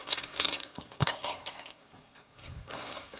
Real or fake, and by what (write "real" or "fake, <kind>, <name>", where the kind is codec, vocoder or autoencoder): fake, codec, SNAC